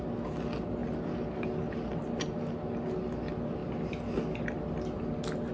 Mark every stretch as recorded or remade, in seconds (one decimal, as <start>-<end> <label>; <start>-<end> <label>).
0.0-5.5 recorded